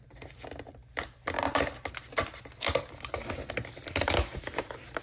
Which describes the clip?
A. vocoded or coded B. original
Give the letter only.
B